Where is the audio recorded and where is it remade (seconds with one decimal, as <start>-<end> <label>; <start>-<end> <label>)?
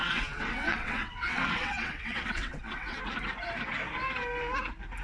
0.0-3.0 remade; 3.0-5.0 recorded